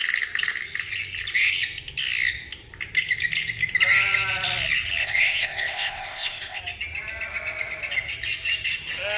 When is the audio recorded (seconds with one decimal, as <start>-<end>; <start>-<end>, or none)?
0.0-5.0; 6.6-9.2